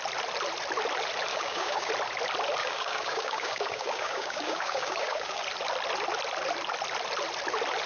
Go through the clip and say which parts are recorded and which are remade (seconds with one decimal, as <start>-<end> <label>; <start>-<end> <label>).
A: 0.0-1.3 recorded; 1.3-1.9 remade; 1.9-2.6 recorded; 2.6-5.4 remade; 5.4-7.9 recorded